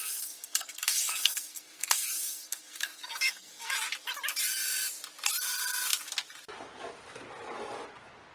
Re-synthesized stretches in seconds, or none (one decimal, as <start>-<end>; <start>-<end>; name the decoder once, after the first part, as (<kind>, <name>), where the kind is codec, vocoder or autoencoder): 0.0-3.7 (codec, SNAC)